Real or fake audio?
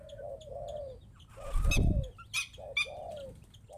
real